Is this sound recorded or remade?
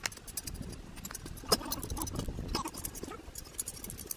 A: recorded